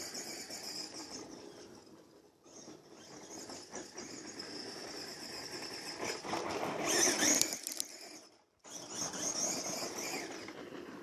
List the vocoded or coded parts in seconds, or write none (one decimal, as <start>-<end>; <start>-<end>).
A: none